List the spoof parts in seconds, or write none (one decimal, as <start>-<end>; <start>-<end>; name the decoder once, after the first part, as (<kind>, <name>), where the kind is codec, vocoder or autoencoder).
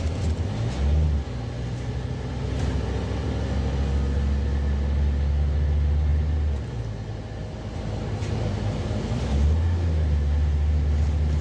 none